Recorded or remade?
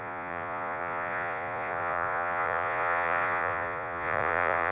remade